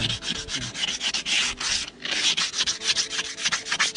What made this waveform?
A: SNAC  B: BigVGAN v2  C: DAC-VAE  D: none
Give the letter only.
D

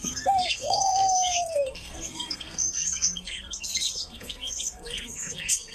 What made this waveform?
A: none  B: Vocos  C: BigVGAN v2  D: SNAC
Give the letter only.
D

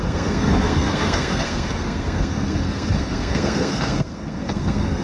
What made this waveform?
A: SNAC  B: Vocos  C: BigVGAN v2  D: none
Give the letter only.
A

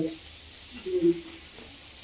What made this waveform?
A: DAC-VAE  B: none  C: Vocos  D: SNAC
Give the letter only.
B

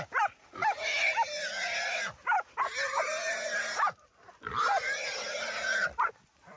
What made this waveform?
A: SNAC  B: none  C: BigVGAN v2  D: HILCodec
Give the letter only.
B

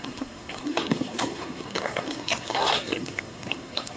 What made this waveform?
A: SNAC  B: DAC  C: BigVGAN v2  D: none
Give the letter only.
A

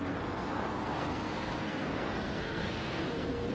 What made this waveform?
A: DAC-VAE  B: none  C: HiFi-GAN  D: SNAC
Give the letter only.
D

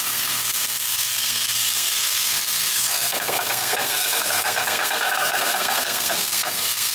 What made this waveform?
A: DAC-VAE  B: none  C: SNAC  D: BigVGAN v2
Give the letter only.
C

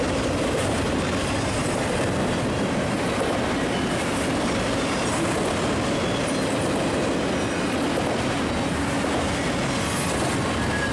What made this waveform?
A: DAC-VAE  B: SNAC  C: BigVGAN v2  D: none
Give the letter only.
D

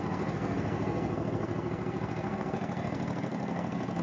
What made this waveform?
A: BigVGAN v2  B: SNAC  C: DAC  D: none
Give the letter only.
B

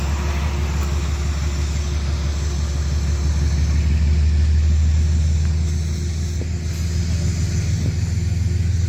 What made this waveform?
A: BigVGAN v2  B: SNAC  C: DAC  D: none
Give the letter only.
D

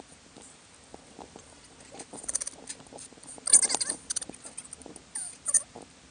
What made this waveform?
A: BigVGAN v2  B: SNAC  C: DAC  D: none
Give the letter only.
D